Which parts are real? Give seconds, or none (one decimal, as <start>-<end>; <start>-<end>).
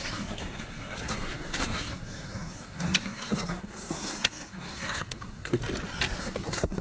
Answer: 5.6-6.2